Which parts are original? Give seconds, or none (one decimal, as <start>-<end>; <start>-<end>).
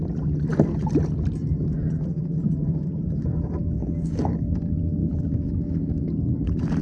0.0-3.8; 4.5-5.0; 5.5-6.8